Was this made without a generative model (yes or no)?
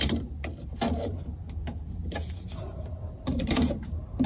yes